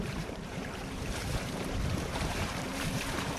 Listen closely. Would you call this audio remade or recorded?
remade